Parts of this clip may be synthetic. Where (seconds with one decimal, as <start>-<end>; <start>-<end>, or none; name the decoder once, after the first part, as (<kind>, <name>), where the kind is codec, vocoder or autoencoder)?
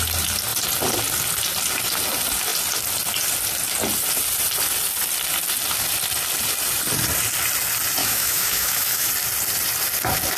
8.0-9.1 (autoencoder, DAC-VAE)